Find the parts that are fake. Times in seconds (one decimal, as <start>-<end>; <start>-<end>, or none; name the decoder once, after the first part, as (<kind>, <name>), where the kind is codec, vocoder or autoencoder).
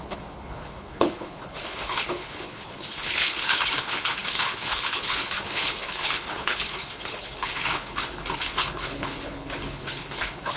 0.0-10.6 (codec, HILCodec)